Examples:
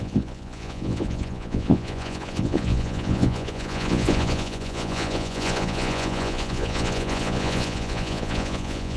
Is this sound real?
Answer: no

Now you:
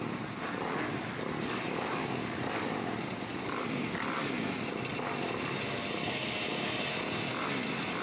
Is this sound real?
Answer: yes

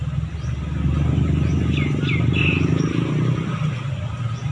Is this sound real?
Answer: yes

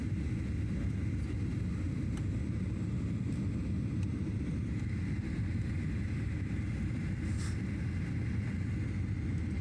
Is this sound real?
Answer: yes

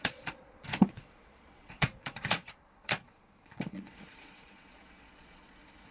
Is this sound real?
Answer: no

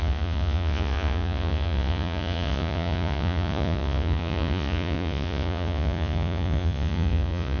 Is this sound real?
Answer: no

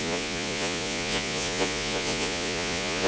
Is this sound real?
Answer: no